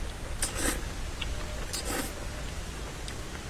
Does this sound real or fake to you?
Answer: real